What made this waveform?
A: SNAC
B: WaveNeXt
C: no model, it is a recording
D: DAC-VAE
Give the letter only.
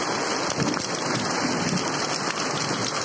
C